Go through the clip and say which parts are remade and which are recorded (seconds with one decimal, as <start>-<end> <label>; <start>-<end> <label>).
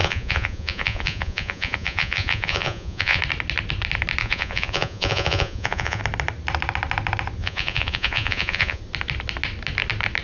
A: 0.0-3.2 remade; 3.2-4.2 recorded; 4.2-6.0 remade; 6.0-7.4 recorded; 7.4-8.8 remade; 8.8-10.2 recorded